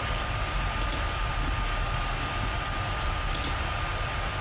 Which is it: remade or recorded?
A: recorded